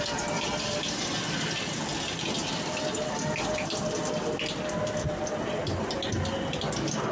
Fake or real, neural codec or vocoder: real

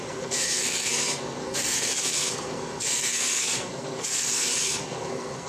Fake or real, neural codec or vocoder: fake, codec, SNAC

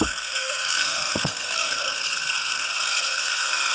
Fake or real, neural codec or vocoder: fake, codec, SNAC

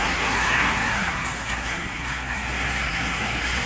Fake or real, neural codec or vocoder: fake, codec, SNAC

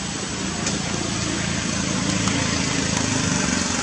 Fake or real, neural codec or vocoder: real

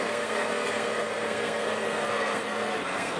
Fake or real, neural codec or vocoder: fake, codec, SNAC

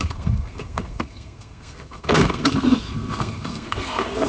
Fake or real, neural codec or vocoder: fake, codec, SNAC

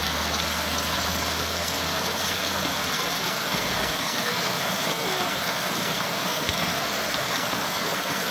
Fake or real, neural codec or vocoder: fake, codec, SNAC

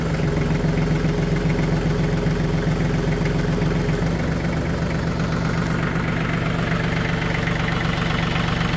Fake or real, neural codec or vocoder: real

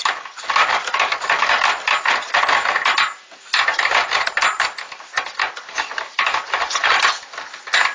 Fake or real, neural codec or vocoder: real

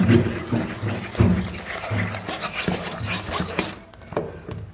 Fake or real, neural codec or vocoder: real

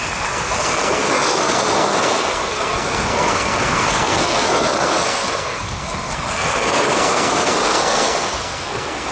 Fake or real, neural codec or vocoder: fake, codec, SNAC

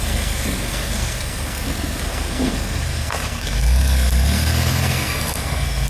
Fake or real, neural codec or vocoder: fake, codec, SNAC